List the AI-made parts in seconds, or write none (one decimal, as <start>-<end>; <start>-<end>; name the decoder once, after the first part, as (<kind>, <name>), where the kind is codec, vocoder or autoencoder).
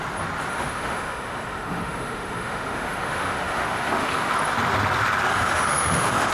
0.5-4.3 (autoencoder, DAC-VAE); 5.3-6.3